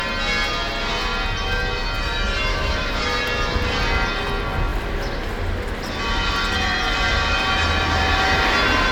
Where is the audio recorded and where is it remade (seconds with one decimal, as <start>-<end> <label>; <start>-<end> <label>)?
0.0-2.5 recorded; 2.5-3.0 remade; 3.0-8.9 recorded

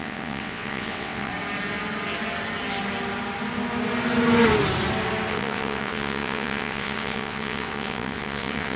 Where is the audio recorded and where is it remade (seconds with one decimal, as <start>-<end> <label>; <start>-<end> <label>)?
0.0-1.3 remade; 1.3-5.3 recorded; 5.3-8.8 remade

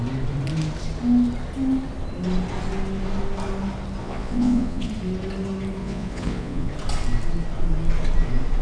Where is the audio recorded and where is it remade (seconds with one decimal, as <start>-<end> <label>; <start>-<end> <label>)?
0.0-4.0 recorded; 4.0-4.9 remade; 4.9-5.8 recorded; 5.8-6.7 remade; 6.7-8.6 recorded